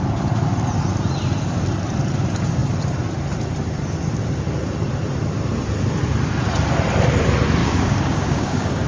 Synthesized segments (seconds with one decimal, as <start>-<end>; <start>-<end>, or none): 7.6-8.9